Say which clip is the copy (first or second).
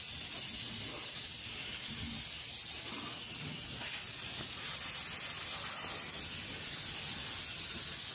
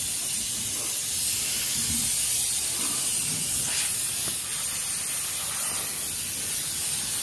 second